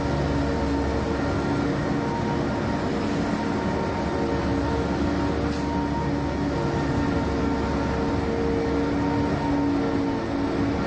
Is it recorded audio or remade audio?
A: recorded